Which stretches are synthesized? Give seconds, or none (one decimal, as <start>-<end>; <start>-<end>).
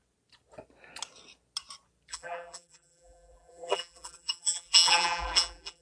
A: 2.1-5.8